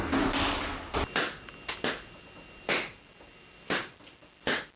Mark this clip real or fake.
real